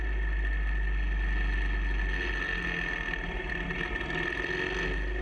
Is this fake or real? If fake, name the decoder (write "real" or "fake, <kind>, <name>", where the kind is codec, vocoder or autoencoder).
real